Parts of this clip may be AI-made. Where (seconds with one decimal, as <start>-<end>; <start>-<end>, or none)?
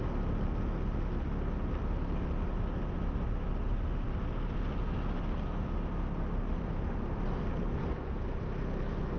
none